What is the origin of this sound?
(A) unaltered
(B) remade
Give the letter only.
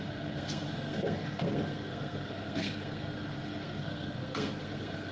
B